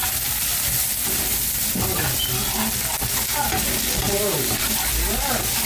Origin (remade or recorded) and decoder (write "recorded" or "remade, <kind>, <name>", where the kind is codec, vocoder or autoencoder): recorded